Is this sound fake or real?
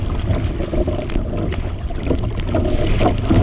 real